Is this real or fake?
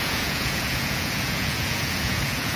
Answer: fake